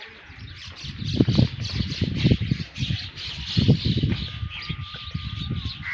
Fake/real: real